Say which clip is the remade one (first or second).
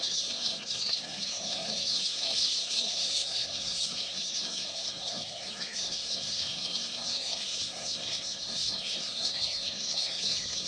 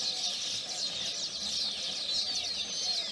first